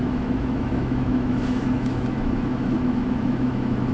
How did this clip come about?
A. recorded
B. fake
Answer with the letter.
B